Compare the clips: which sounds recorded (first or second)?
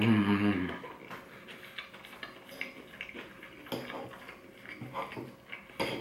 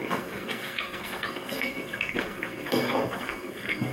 first